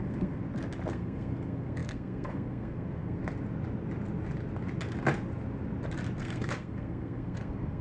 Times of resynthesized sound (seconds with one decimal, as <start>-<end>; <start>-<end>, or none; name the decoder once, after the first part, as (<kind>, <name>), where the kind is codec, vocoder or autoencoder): 0.0-0.4 (codec, SNAC); 0.9-3.2; 6.2-7.8